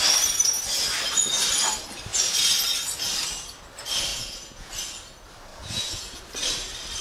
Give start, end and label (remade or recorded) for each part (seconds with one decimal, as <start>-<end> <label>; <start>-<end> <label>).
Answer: 0.0-4.1 recorded; 4.1-4.7 remade; 4.7-5.5 recorded; 5.5-6.2 remade; 6.2-7.0 recorded